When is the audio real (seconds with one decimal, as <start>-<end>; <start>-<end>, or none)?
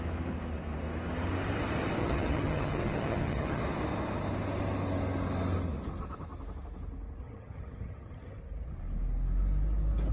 0.0-2.0; 3.6-7.2; 8.4-10.1